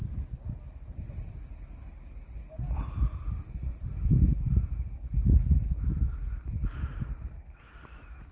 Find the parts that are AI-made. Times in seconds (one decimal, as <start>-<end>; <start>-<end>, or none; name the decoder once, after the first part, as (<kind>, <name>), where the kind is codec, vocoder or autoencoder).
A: none